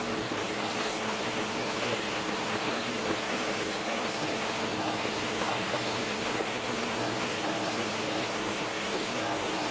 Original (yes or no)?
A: no